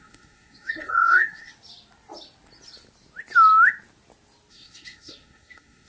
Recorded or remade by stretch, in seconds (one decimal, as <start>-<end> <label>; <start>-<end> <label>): 0.0-1.5 remade; 1.5-4.5 recorded; 4.5-5.9 remade